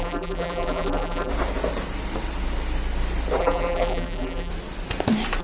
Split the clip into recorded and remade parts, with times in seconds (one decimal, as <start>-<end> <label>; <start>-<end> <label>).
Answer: 0.0-1.3 remade; 1.3-3.4 recorded; 3.4-4.5 remade; 4.5-5.4 recorded